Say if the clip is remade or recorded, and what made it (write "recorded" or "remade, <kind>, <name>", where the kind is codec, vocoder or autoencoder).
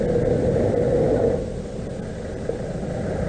recorded